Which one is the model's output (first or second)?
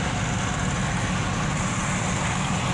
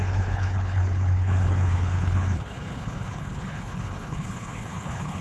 second